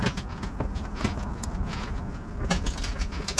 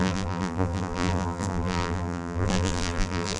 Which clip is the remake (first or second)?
second